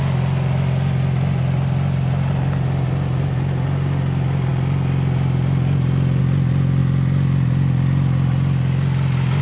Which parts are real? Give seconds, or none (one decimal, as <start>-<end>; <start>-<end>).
0.0-9.4